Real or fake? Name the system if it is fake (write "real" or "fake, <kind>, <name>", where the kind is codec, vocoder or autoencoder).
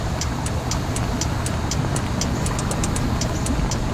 real